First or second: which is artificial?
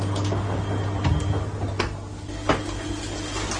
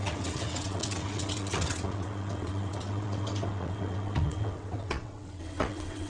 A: second